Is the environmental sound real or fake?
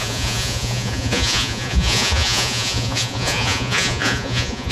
fake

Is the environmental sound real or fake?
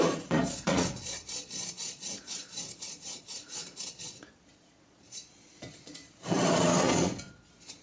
fake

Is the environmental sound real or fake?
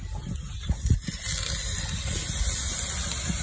real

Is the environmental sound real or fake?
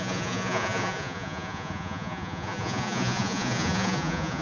fake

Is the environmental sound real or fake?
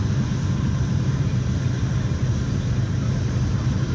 real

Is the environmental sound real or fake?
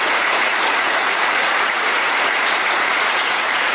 fake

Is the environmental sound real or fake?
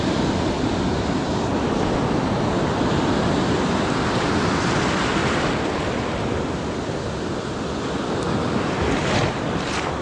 real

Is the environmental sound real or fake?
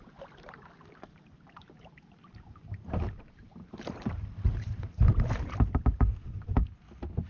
real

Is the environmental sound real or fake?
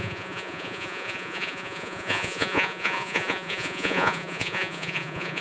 fake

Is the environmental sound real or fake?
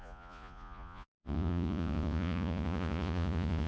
fake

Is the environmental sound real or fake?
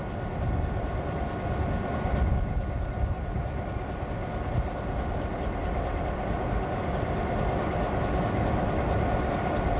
real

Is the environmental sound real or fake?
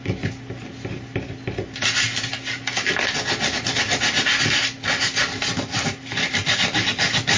real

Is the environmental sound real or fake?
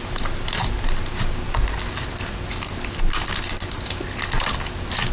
real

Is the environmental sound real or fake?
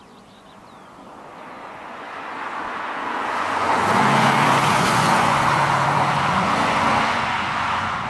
fake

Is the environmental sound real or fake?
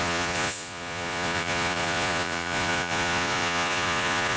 fake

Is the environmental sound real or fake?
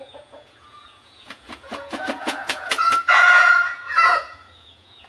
fake